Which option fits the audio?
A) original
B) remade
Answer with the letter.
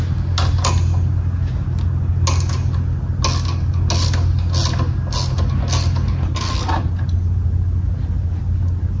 A